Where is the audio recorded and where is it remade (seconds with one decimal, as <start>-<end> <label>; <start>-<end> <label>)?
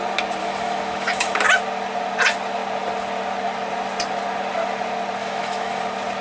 0.0-0.4 recorded; 0.4-1.4 remade; 1.4-5.2 recorded; 5.2-5.8 remade; 5.8-6.2 recorded